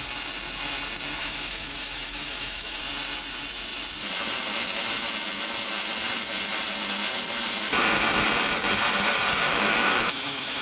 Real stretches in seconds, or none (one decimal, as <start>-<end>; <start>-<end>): 0.0-1.2; 2.8-9.5